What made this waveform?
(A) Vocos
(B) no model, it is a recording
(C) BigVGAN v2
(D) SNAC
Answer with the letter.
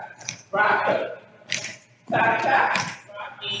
B